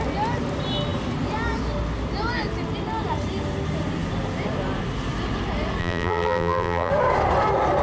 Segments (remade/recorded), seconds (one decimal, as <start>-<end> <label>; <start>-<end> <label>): 0.0-5.8 recorded; 5.8-6.9 remade; 6.9-7.8 recorded